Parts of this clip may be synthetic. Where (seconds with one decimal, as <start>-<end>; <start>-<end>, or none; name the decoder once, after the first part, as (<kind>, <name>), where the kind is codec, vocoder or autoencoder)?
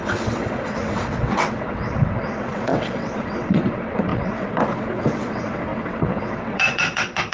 0.0-7.3 (vocoder, WaveNeXt)